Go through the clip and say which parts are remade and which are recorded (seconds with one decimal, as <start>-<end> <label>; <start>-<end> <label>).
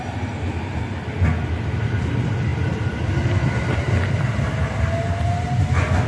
0.0-2.5 recorded; 2.5-4.9 remade; 4.9-6.1 recorded